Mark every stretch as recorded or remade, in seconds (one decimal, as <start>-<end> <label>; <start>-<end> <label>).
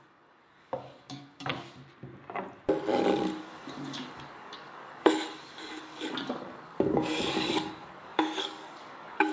0.0-1.5 remade; 1.5-3.4 recorded; 3.4-9.3 remade